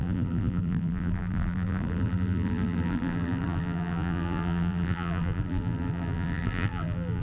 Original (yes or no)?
no